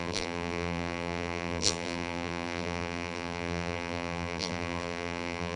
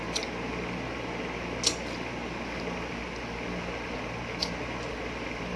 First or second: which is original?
second